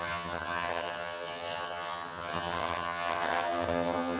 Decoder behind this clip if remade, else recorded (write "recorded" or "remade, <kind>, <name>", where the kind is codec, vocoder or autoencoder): remade, vocoder, HiFi-GAN